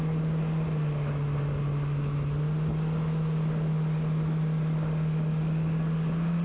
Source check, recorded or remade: recorded